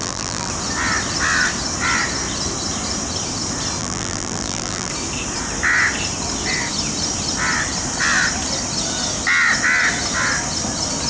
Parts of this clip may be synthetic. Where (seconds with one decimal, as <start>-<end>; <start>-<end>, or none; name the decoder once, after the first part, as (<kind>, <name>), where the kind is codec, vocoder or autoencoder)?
0.0-0.5 (vocoder, BigVGAN v2); 3.8-4.9